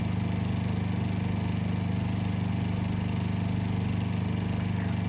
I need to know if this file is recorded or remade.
recorded